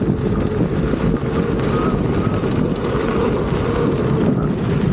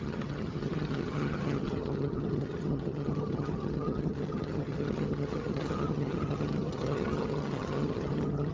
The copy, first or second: second